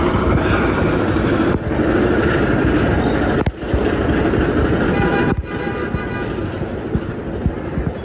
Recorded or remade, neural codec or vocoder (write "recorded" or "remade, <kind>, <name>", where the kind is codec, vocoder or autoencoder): recorded